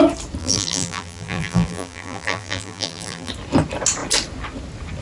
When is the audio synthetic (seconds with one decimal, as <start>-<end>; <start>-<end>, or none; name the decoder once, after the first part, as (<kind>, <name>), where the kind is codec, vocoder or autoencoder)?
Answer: 0.4-3.3 (vocoder, BigVGAN v2)